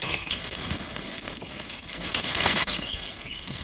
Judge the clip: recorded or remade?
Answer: remade